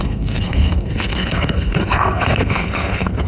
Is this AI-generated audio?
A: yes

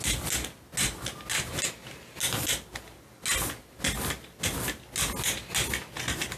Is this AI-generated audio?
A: no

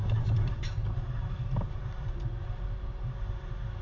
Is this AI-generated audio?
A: yes